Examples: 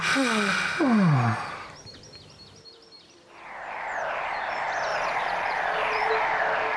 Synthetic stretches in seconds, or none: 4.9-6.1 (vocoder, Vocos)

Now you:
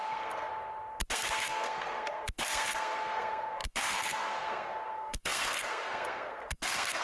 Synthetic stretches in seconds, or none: 0.0-0.5 (codec, SNAC); 1.1-7.0